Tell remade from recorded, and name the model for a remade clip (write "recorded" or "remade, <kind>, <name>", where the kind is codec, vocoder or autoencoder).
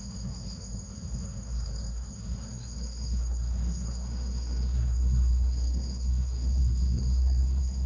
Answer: remade, codec, SNAC